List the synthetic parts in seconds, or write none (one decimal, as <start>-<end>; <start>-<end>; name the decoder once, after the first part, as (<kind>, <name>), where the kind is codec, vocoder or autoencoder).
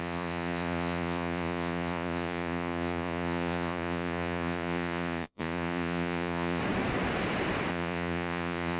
0.0-6.6 (vocoder, Vocos); 7.7-8.8